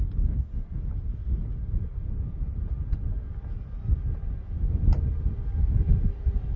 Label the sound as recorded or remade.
recorded